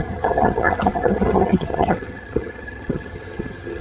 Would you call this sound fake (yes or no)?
yes